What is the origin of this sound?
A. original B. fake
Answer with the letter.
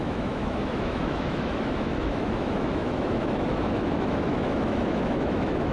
B